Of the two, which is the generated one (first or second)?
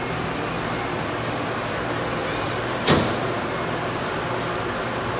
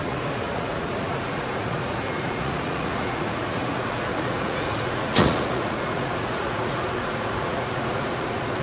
second